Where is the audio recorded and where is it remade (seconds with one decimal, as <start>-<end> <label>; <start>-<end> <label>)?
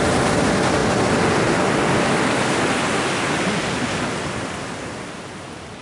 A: 0.0-5.8 recorded